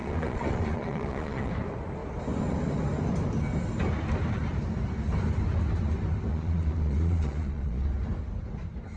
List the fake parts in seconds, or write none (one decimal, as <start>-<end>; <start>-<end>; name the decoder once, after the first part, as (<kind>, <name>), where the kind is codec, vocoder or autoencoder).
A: 0.0-1.5 (vocoder, Vocos); 6.3-7.9